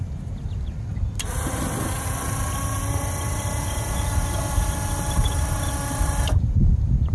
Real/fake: real